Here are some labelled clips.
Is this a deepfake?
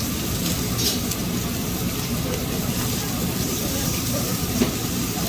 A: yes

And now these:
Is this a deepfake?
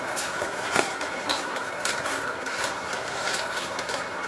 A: yes